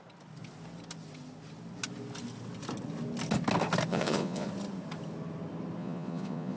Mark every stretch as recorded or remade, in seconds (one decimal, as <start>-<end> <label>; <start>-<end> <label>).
0.0-3.9 recorded; 3.9-4.5 remade; 4.5-5.8 recorded; 5.8-6.6 remade